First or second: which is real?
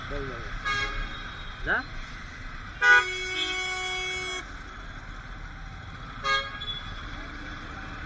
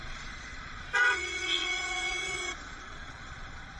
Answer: first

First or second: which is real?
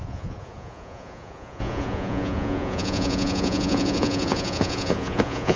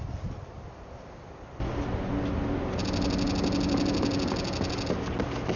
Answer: second